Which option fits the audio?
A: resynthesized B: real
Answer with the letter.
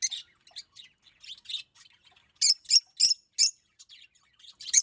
B